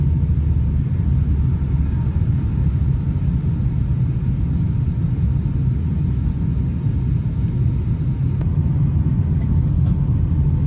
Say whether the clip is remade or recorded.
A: recorded